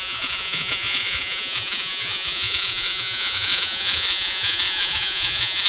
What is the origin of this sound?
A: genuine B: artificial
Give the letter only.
B